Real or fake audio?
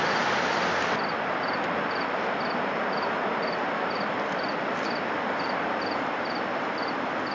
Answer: real